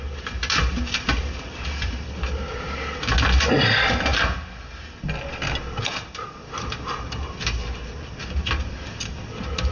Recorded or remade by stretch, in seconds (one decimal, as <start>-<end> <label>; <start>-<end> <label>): 0.0-9.7 recorded